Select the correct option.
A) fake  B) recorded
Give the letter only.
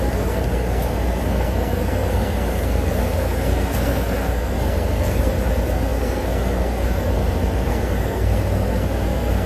A